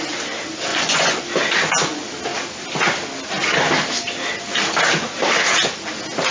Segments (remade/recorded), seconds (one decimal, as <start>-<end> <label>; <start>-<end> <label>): 0.0-0.7 recorded; 0.7-1.2 remade; 1.2-6.3 recorded